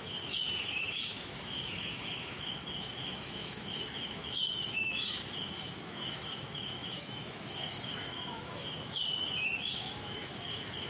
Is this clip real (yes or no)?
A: no